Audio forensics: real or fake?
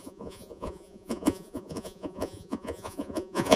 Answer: fake